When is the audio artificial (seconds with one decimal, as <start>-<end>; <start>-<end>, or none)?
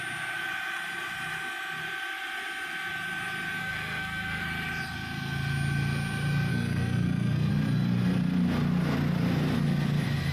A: 3.6-4.4; 6.5-7.5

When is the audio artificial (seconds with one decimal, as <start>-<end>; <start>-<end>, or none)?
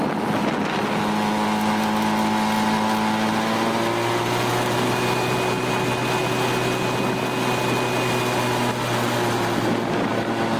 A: none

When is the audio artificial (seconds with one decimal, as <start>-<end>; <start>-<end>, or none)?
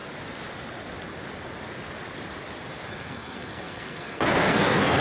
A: 2.9-5.0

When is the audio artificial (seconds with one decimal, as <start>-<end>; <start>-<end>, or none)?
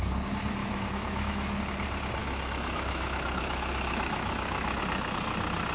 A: 0.6-1.6; 2.2-4.8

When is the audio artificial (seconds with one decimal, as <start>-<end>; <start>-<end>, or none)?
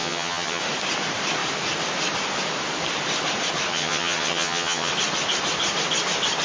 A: 0.0-0.6; 3.7-4.9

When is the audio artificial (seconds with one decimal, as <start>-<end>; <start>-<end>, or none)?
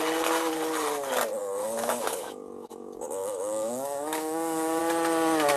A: 1.4-4.8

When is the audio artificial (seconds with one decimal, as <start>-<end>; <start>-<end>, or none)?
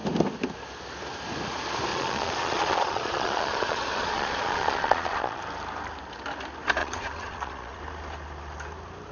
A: 1.9-5.4; 6.8-7.8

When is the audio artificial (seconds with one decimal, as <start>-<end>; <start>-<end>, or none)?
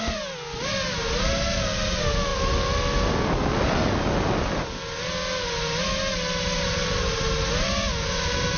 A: none